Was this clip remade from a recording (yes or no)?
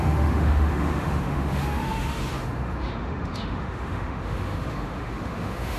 yes